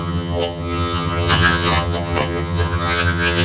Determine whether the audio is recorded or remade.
remade